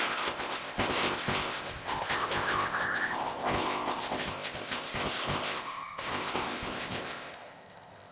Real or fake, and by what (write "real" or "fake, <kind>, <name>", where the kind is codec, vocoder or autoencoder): fake, codec, ZipCodec